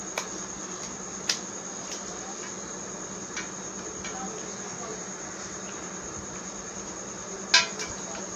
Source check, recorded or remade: recorded